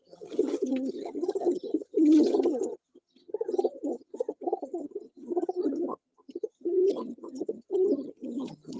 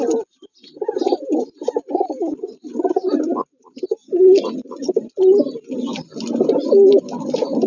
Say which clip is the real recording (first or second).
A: second